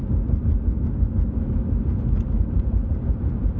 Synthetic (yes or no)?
no